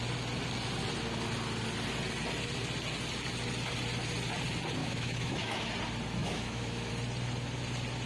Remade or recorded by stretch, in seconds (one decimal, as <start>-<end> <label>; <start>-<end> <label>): 0.0-4.8 recorded; 4.8-5.7 remade; 5.7-6.2 recorded; 6.2-6.9 remade; 6.9-8.1 recorded